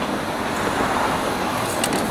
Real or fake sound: real